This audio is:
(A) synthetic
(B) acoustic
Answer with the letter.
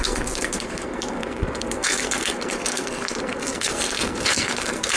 A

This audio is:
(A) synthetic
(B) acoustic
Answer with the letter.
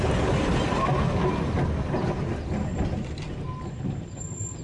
B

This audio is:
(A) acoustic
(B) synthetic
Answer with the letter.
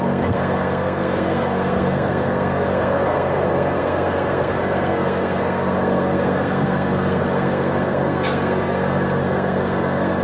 B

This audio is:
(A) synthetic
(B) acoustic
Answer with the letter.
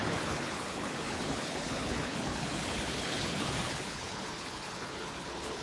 A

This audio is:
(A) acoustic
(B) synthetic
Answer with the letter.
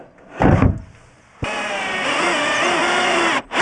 A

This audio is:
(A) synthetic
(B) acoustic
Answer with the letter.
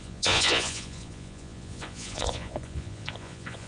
A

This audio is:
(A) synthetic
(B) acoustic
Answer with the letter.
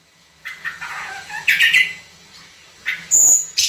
A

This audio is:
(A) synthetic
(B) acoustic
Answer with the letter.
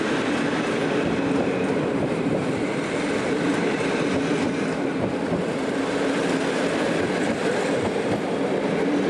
A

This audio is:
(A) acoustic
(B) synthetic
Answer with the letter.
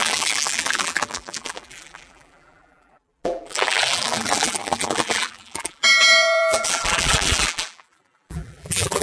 B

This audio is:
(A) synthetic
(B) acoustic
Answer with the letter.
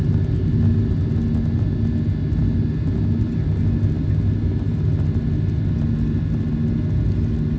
B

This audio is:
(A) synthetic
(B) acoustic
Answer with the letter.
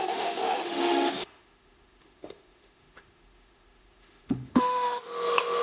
A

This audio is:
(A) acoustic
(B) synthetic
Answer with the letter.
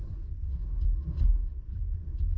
A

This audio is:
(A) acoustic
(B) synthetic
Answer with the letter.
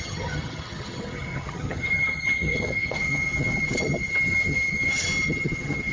B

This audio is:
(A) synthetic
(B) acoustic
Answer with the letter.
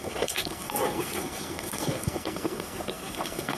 A